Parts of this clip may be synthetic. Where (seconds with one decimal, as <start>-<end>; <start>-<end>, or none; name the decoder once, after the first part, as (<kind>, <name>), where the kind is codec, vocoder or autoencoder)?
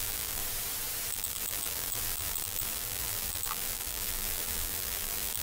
0.0-0.4 (vocoder, BigVGAN v2); 1.1-5.4